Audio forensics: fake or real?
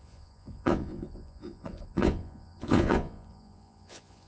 fake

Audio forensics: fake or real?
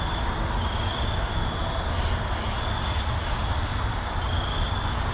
real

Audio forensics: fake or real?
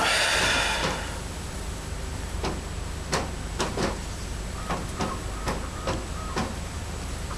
real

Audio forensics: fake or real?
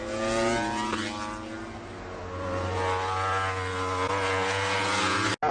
real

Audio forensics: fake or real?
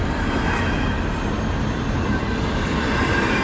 real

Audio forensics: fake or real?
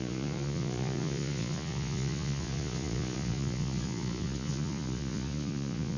fake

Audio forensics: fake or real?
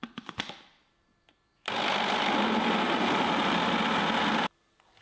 real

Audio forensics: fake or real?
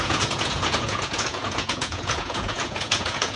fake